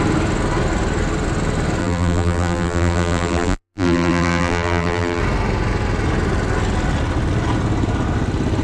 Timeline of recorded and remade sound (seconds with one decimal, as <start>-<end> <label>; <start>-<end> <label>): 0.0-1.8 recorded; 1.8-5.2 remade; 5.2-8.6 recorded